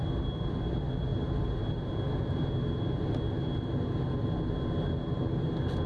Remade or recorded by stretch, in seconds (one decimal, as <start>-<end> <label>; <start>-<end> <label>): 0.0-5.9 recorded